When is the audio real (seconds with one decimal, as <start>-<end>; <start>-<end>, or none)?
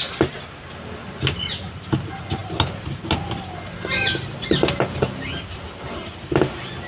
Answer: 0.0-6.9